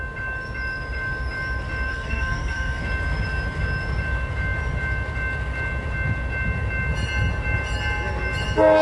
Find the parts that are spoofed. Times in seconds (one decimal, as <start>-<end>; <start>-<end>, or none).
1.9-2.8